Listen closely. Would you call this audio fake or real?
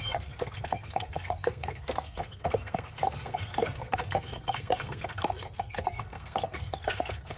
fake